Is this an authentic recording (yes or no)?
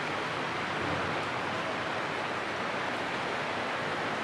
yes